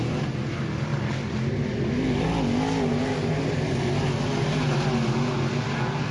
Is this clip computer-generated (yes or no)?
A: no